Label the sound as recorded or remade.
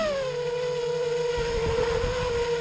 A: recorded